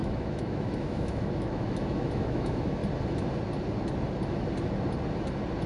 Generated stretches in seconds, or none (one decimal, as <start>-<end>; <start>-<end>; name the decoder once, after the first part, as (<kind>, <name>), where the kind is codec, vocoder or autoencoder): 0.0-2.8 (autoencoder, DAC-VAE)